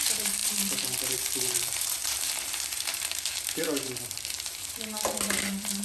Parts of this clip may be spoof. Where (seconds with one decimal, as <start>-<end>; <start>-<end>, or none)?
0.0-5.8